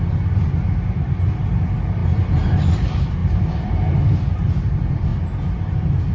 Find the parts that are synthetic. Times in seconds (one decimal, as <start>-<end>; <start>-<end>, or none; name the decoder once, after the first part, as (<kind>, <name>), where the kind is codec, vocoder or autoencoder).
none